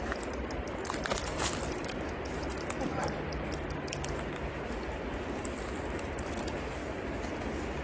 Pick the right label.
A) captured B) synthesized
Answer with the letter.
A